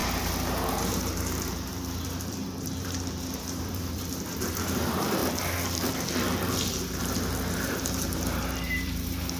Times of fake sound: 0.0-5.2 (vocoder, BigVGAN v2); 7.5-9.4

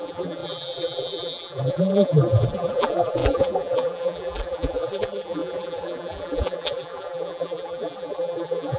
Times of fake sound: 0.0-8.8 (vocoder, BigVGAN v2)